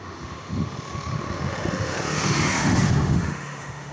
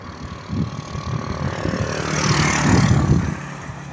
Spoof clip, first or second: first